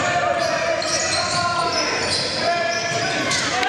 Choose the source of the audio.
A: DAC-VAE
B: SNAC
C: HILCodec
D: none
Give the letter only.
D